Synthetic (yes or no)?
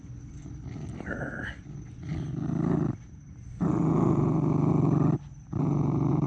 no